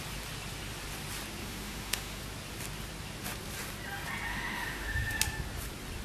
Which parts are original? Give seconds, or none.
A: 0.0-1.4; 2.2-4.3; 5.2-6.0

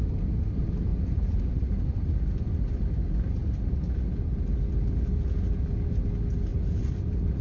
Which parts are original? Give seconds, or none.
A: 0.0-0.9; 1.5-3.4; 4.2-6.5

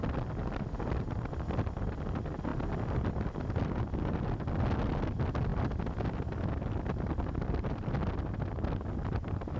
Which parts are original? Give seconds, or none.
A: 0.0-9.6